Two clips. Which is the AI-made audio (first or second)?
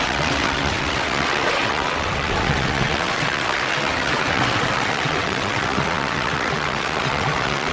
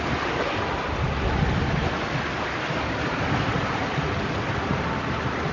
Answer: first